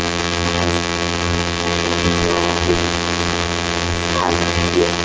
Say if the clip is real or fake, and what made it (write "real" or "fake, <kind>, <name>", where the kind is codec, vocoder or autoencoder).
fake, vocoder, BigVGAN v2